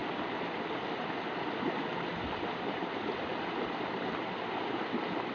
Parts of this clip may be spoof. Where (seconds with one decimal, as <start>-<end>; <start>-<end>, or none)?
none